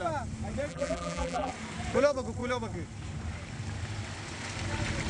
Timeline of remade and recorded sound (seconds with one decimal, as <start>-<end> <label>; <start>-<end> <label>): 0.0-0.7 recorded; 0.7-1.5 remade; 1.5-5.1 recorded